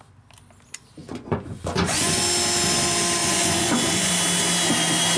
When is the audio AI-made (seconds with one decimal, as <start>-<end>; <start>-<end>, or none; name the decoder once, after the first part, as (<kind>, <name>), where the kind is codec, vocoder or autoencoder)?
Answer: 1.0-2.2 (vocoder, Vocos); 3.2-4.1